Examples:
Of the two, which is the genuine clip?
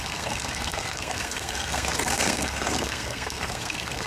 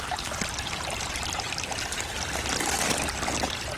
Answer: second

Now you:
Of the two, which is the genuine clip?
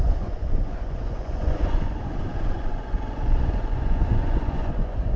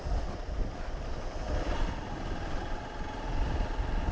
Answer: second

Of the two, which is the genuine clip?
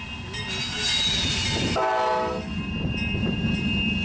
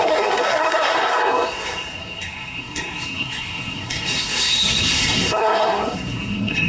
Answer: first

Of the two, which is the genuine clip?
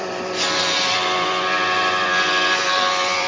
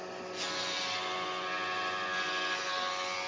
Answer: second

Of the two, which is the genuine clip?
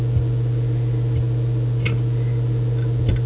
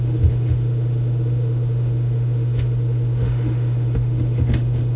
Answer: first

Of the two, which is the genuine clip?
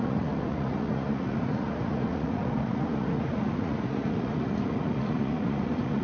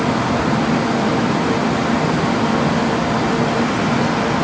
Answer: second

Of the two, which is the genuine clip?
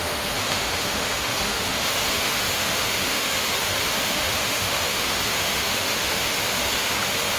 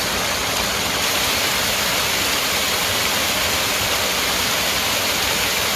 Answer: second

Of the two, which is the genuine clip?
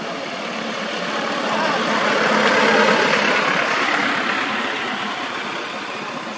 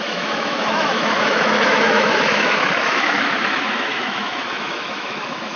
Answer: first